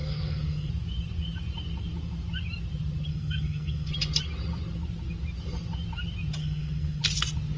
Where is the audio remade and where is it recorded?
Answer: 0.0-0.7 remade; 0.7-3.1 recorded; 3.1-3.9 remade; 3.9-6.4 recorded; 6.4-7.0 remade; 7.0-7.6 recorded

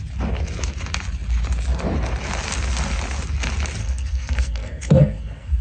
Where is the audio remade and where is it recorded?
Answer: 0.0-3.8 recorded; 3.8-5.6 remade

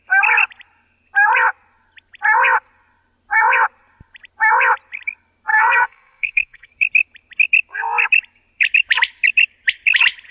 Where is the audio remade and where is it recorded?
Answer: 0.0-5.5 recorded; 5.5-6.7 remade; 6.7-10.3 recorded

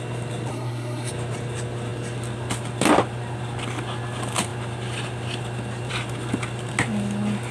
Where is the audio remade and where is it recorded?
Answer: 0.0-0.5 recorded; 0.5-1.1 remade; 1.1-7.5 recorded